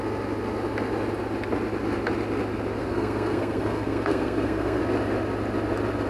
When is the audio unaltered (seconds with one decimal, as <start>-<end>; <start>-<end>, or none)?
0.0-2.8; 4.8-6.1

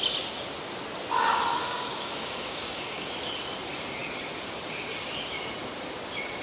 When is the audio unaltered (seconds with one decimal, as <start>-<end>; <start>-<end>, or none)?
0.0-1.6; 3.1-6.4

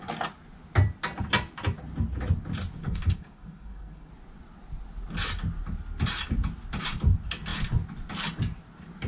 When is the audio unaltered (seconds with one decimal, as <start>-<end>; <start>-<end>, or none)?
0.0-2.8; 4.1-9.1

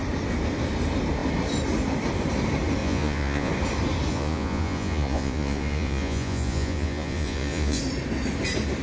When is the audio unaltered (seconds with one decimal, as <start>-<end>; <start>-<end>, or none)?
0.0-2.8; 3.5-4.1; 7.8-8.8

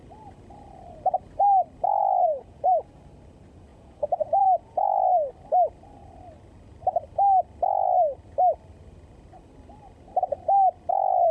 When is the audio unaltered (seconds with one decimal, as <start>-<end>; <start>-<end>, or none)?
0.0-2.0; 2.9-3.7; 5.3-11.3

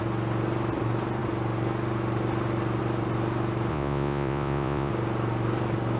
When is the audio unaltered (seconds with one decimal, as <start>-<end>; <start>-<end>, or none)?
0.0-3.7; 4.9-6.0

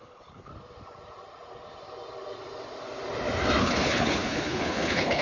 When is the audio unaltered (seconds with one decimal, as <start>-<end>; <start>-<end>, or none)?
0.5-3.6

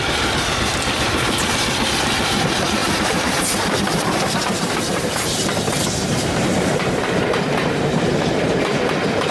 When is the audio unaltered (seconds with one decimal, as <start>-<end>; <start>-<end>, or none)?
0.0-2.8; 7.1-9.3